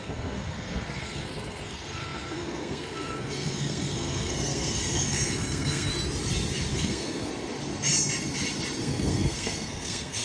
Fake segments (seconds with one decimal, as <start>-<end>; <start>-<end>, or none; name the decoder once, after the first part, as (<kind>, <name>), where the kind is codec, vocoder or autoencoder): 0.0-5.9 (codec, SNAC); 6.7-7.3; 8.8-10.2